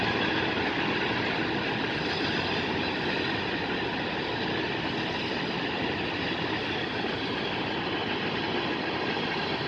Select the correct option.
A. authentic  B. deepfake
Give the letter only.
A